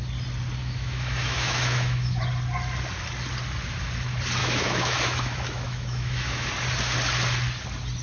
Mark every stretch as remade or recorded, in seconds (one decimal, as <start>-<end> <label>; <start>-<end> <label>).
0.0-0.6 recorded; 0.6-2.2 remade; 2.2-4.4 recorded; 4.4-6.5 remade; 6.5-8.0 recorded